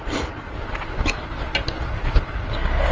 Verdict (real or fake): real